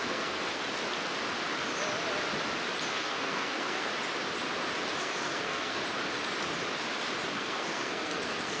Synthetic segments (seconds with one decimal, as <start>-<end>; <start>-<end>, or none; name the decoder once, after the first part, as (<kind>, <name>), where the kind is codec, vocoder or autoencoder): 0.0-0.6 (codec, SNAC); 2.9-3.9; 5.0-5.8; 7.3-8.6